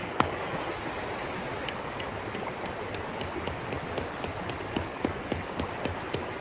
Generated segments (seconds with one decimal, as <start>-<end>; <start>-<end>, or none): 0.0-0.7; 4.9-5.6

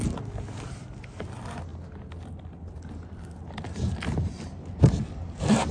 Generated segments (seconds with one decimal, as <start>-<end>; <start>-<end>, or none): none

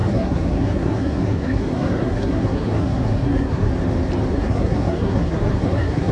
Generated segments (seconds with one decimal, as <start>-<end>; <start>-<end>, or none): 0.0-3.7; 4.3-6.1

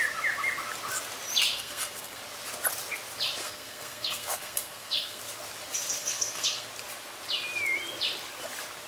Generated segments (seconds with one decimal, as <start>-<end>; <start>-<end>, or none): 1.5-2.2; 3.4-5.2; 6.0-6.7

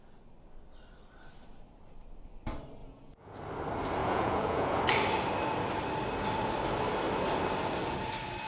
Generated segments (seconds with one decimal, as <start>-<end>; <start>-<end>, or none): 2.8-3.4; 4.0-4.8

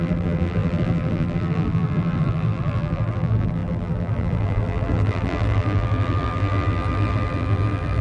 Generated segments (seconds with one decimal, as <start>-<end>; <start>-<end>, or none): 0.0-8.0

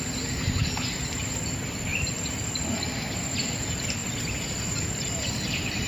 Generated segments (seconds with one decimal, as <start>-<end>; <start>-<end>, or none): 1.9-2.4

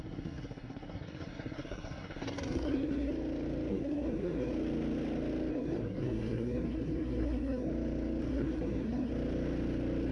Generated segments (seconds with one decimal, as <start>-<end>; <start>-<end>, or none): 0.0-3.1; 3.7-4.5; 5.5-7.7; 8.3-9.1